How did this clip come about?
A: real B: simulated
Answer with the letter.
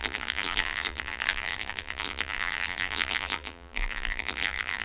B